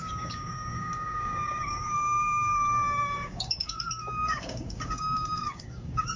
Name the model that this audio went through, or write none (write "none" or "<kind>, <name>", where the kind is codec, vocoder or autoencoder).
codec, DAC